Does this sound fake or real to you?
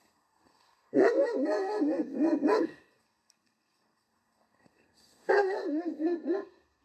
fake